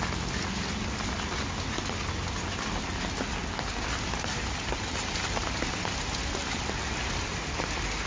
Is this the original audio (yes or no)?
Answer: yes